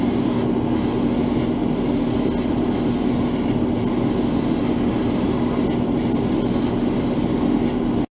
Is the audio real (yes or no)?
yes